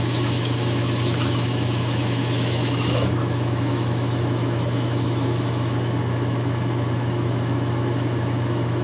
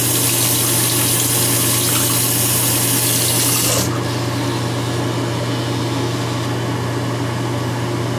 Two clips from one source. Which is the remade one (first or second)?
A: first